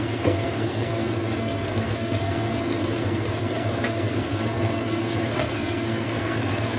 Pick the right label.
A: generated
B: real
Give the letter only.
A